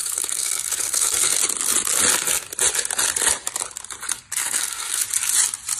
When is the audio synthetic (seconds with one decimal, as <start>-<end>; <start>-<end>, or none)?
0.0-1.4; 4.4-5.0